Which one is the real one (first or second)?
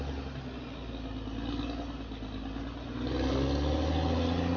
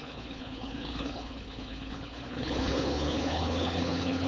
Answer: first